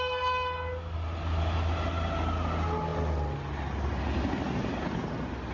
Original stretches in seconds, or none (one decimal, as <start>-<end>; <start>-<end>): 0.0-5.5